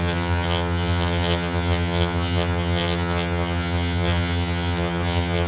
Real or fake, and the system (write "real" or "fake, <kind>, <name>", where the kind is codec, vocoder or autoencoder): fake, vocoder, HiFi-GAN